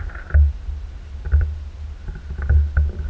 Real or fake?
real